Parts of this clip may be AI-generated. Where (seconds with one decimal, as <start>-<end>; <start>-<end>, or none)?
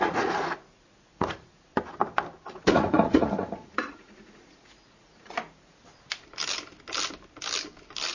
0.0-1.7; 2.5-5.8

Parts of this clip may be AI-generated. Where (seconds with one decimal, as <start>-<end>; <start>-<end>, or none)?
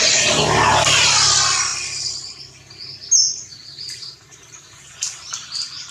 3.6-5.9